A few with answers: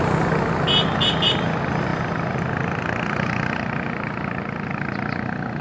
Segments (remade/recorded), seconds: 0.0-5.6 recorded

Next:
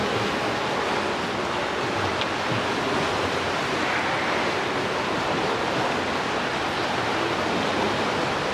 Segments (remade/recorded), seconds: 0.0-8.5 recorded